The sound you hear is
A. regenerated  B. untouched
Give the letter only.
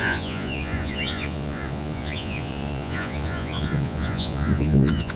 A